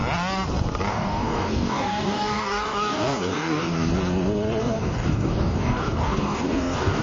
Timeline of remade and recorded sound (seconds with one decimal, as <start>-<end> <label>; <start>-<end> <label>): 0.0-0.9 recorded; 0.9-3.9 remade; 3.9-4.6 recorded; 4.6-7.0 remade

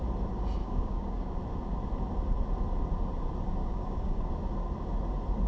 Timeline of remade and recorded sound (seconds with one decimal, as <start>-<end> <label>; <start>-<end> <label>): 0.0-0.6 recorded; 0.6-1.4 remade; 1.4-3.6 recorded; 3.6-4.3 remade; 4.3-5.5 recorded

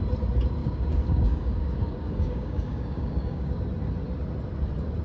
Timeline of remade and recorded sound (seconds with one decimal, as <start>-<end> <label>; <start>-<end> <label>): 0.0-0.6 recorded; 0.6-3.6 remade; 3.6-5.0 recorded

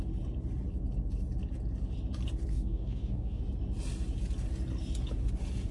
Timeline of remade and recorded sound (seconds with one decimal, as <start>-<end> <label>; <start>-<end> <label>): 0.0-2.5 recorded; 2.5-3.4 remade; 3.4-5.7 recorded

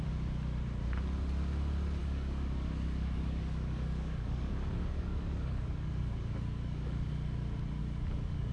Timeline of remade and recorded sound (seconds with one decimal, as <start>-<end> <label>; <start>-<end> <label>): 0.0-2.0 recorded; 2.0-7.1 remade; 7.1-7.8 recorded; 7.8-8.5 remade

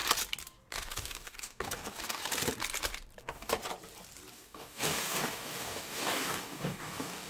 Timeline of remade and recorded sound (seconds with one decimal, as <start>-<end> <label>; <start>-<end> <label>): 0.0-0.7 recorded; 0.7-2.2 remade; 2.2-3.2 recorded; 3.2-3.6 remade; 3.6-4.3 recorded; 4.3-7.3 remade

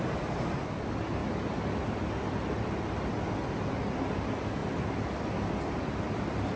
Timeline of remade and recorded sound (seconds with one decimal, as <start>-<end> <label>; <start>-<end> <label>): 0.0-6.6 recorded

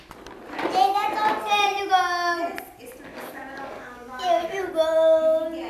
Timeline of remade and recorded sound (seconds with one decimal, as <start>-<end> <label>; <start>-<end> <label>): 0.0-3.1 recorded; 3.1-4.7 remade; 4.7-5.7 recorded